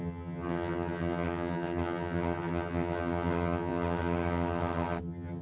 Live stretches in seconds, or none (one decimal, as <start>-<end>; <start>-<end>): none